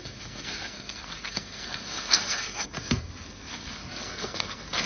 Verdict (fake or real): fake